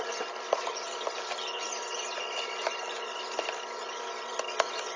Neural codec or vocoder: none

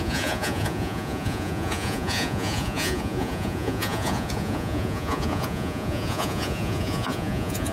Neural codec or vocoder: vocoder, Vocos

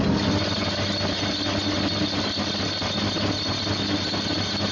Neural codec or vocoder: none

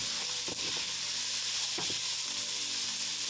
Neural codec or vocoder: none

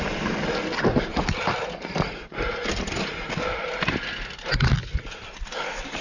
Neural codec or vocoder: none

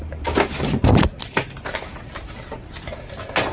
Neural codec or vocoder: none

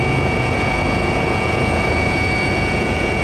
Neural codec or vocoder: vocoder, Vocos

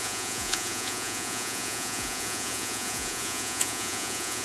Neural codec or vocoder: vocoder, Vocos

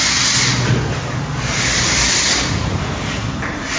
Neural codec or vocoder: none